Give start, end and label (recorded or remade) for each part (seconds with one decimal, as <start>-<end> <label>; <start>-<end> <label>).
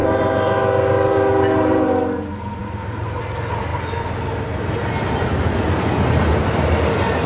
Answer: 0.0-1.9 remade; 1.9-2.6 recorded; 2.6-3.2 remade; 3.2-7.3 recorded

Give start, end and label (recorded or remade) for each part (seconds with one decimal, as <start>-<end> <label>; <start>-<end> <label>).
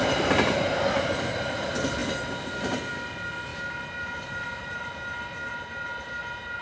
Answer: 0.0-3.5 recorded; 3.5-4.9 remade; 4.9-6.6 recorded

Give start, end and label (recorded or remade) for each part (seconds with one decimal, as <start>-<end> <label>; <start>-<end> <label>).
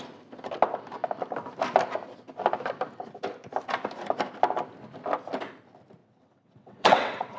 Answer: 0.0-6.0 recorded; 6.0-7.4 remade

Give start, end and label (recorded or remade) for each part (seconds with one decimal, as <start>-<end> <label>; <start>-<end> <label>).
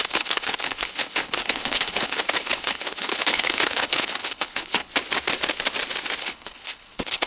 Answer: 0.0-4.9 remade; 4.9-6.2 recorded; 6.2-7.3 remade